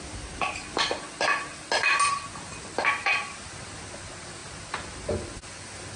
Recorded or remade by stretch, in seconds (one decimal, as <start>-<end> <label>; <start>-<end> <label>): 0.0-6.0 recorded